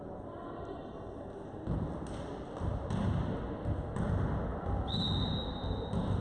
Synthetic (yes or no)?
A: no